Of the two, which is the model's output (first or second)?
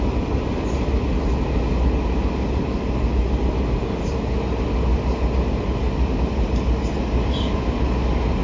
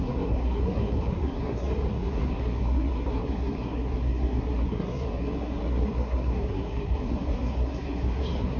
second